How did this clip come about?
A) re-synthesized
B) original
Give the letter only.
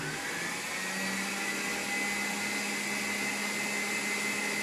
B